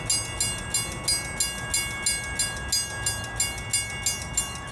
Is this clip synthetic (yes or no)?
no